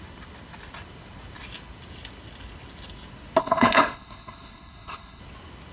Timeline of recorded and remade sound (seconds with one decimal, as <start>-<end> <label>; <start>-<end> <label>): 0.0-3.4 recorded; 3.4-5.2 remade; 5.2-5.7 recorded